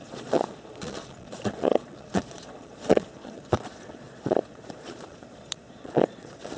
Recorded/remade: remade